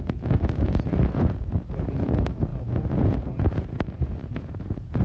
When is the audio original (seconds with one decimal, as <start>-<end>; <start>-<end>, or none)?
none